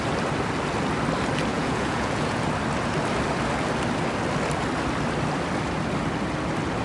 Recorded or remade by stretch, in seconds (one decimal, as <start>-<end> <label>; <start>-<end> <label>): 0.0-1.5 recorded; 1.5-2.4 remade; 2.4-6.8 recorded